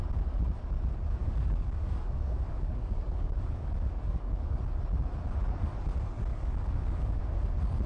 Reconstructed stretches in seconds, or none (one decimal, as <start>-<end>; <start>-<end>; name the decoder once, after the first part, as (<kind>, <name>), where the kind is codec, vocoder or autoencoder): 1.2-4.6 (codec, DAC); 6.3-7.2